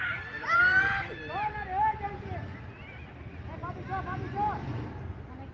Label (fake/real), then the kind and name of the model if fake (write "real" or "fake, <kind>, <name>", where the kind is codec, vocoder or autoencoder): real